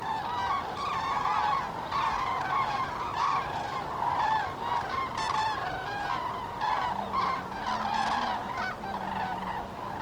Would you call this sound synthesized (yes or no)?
no